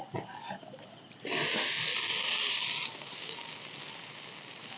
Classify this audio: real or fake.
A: real